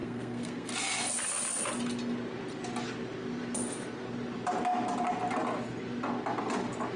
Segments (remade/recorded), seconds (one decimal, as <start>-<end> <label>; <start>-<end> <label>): 0.0-0.7 remade; 0.7-7.0 recorded